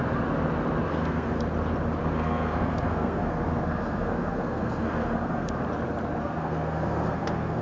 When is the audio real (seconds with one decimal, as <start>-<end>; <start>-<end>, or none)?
0.0-0.9; 1.4-2.0; 5.6-6.2